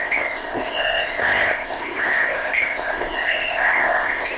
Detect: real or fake fake